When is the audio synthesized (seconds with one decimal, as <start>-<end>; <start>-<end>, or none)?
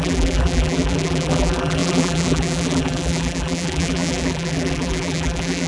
0.0-5.7